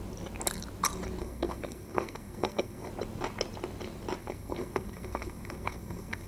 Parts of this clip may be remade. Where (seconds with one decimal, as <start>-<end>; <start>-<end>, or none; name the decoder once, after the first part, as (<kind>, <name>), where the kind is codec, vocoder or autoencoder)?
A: 1.2-2.9 (codec, SNAC); 4.2-6.3